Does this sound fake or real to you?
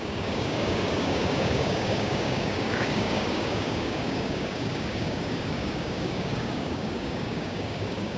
fake